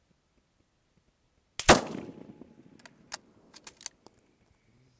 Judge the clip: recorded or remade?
recorded